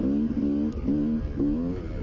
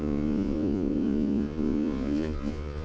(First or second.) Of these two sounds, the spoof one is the second